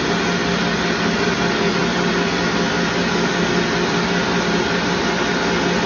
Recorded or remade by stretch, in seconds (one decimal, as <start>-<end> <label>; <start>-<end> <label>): 0.0-5.9 recorded